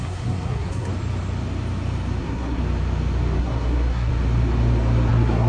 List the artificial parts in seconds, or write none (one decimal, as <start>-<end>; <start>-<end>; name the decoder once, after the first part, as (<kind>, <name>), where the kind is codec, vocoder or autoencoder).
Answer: 0.0-0.9 (codec, SNAC); 2.2-2.6; 3.4-4.1; 5.1-5.5